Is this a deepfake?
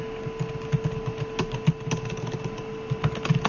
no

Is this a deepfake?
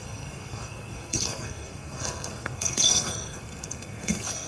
yes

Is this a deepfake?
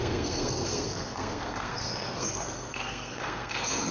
yes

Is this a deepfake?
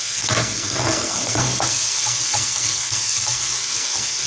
yes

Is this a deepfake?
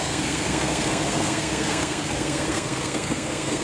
yes